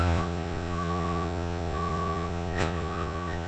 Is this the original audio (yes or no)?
no